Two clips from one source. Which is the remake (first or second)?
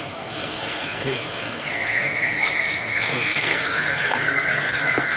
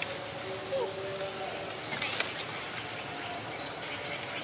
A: first